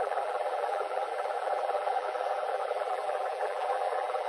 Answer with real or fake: fake